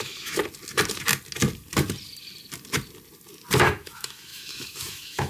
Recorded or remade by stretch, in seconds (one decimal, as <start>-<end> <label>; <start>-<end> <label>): 0.0-0.4 remade; 0.4-3.6 recorded; 3.6-5.3 remade